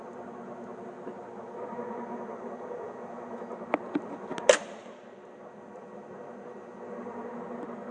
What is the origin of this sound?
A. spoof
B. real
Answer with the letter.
B